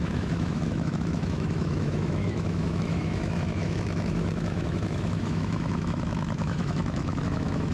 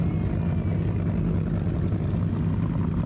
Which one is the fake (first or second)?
first